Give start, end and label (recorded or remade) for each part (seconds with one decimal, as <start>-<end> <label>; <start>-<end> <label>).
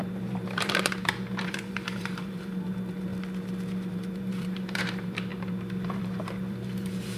0.0-3.1 remade; 3.1-3.9 recorded; 3.9-7.2 remade